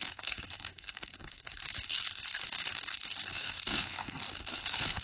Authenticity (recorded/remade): remade